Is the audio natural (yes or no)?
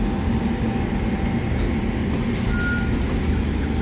yes